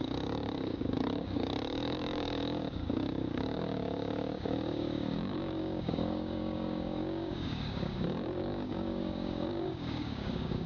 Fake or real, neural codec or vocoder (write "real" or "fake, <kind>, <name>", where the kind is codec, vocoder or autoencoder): fake, codec, DAC